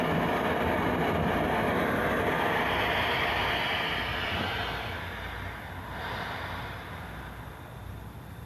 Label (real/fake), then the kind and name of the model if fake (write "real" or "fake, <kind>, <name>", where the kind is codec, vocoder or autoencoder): fake, vocoder, BigVGAN v2